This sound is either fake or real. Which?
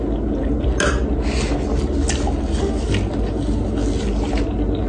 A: real